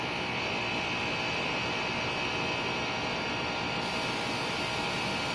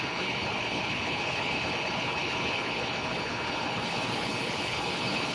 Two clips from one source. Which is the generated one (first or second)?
second